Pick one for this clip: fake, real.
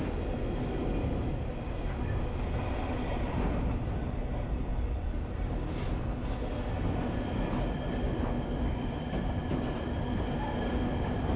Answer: real